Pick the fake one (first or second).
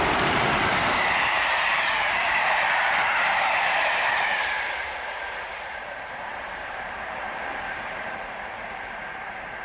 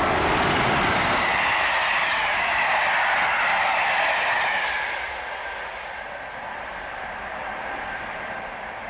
first